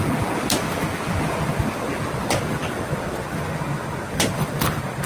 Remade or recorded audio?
recorded